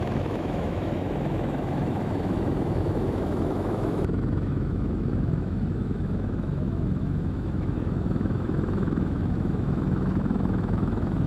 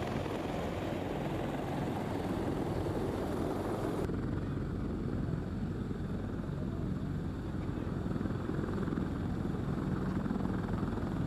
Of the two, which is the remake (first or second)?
first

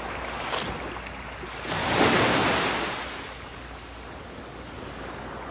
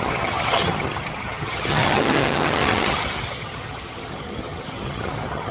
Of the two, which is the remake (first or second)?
second